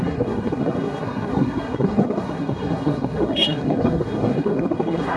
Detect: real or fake fake